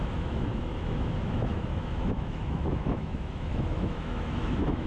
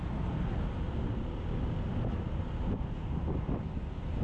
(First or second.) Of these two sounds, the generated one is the first